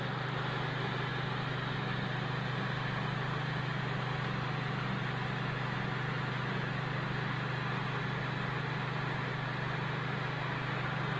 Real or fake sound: real